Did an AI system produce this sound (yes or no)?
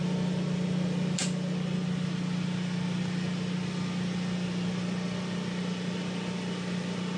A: no